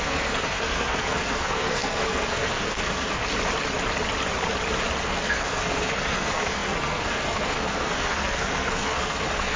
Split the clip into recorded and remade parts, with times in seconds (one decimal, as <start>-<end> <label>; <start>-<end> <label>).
0.0-3.2 remade; 3.2-5.0 recorded; 5.0-9.6 remade